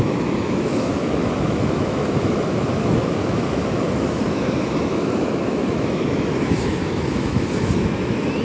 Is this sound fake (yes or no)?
yes